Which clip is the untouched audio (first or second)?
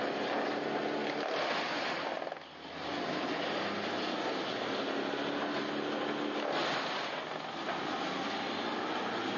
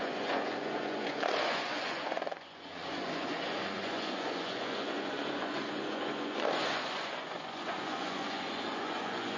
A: first